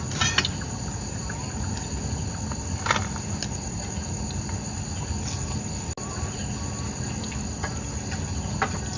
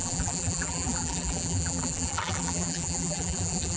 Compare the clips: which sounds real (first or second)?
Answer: first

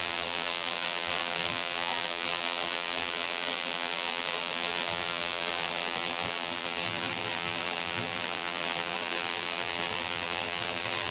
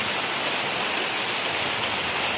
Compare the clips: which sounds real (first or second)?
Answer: second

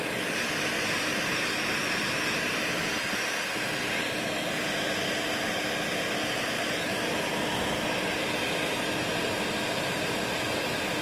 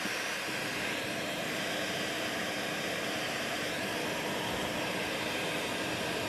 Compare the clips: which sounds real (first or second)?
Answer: first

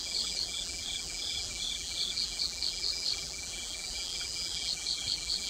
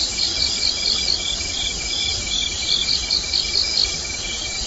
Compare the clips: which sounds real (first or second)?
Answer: second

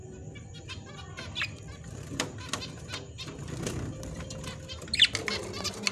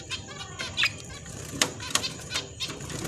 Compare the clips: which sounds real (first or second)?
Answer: first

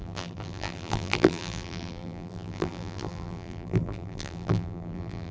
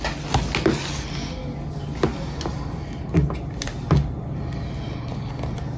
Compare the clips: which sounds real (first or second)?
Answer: second